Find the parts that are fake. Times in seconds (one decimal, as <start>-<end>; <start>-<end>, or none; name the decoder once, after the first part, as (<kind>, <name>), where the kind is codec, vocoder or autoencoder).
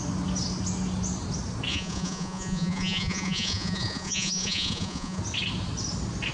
1.7-5.2 (vocoder, Vocos)